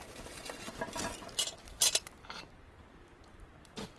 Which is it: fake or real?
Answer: real